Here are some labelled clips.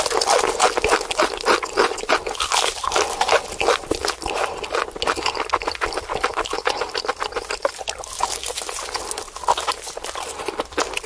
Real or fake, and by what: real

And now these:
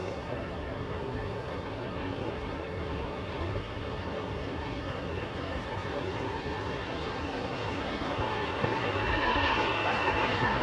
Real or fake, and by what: fake, codec, SNAC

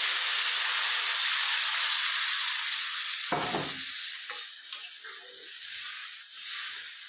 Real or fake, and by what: real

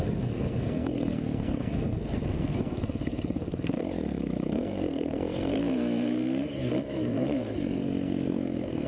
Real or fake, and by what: fake, codec, SNAC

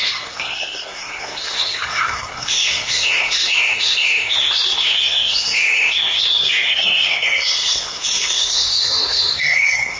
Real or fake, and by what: fake, codec, SNAC